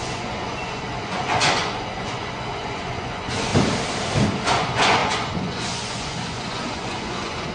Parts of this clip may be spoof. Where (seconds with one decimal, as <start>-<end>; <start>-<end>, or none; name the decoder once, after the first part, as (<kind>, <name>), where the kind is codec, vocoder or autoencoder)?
0.0-3.5 (vocoder, Vocos); 4.4-7.5